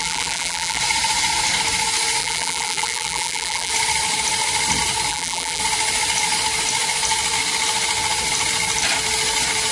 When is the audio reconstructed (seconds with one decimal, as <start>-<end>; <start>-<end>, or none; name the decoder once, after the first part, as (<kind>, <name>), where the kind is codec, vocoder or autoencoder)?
0.0-0.8 (vocoder, BigVGAN v2); 2.2-3.7; 5.1-5.6